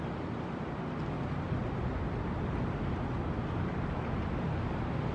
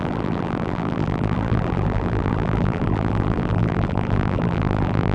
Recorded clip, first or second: first